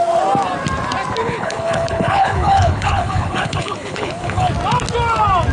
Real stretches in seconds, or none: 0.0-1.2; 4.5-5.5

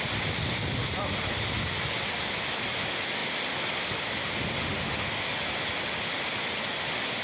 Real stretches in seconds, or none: 0.0-4.6; 5.1-7.2

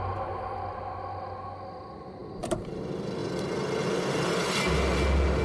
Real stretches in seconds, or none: 0.0-2.2; 2.8-5.4

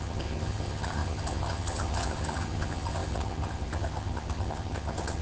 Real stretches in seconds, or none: none